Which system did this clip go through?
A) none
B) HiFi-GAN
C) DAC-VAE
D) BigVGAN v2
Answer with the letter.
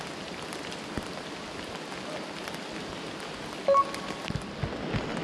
A